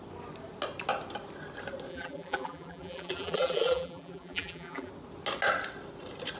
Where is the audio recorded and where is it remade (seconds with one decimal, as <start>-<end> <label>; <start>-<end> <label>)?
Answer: 0.0-1.9 recorded; 1.9-4.9 remade; 4.9-6.4 recorded